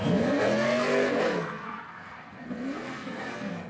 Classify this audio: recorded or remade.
remade